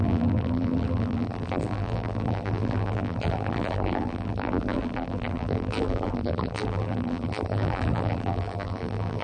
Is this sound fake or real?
fake